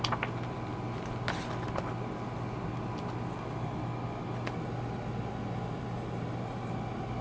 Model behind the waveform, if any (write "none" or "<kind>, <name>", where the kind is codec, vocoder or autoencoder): none